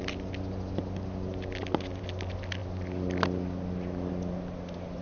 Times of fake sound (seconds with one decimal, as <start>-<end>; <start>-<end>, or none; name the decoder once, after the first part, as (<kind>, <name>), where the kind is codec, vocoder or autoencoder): none